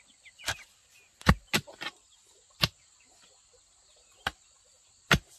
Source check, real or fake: fake